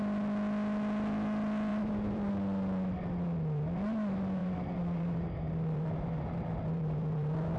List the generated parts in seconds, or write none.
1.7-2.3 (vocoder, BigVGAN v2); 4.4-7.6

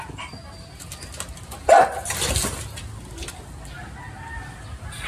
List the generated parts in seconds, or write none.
none